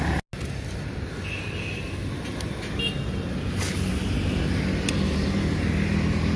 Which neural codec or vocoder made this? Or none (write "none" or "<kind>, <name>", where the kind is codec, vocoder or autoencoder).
none